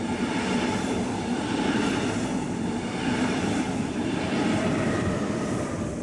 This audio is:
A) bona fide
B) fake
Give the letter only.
B